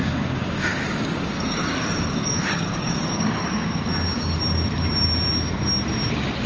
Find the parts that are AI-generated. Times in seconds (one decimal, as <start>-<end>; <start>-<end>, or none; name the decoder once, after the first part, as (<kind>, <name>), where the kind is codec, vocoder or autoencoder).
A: 0.0-3.9 (codec, DAC); 6.1-6.5